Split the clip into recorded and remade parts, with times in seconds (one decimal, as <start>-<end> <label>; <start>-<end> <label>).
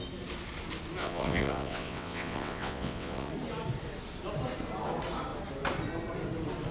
0.0-1.0 recorded; 1.0-3.3 remade; 3.3-6.7 recorded